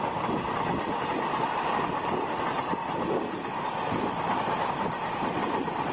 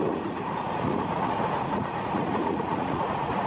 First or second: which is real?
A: first